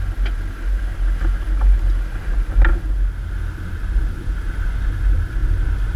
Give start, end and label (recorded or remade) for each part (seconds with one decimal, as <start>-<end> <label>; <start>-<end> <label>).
0.0-6.0 recorded